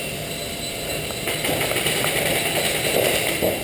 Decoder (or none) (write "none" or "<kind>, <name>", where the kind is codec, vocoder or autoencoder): none